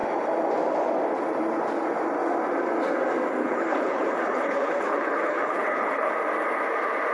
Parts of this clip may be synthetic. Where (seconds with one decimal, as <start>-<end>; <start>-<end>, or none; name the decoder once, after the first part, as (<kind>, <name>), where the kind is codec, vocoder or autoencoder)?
3.4-6.1 (codec, HILCodec)